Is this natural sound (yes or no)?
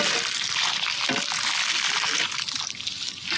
yes